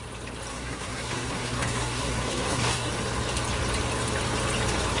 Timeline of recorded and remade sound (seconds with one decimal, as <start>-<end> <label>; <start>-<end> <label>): 0.0-0.5 recorded; 0.5-2.9 remade; 2.9-5.0 recorded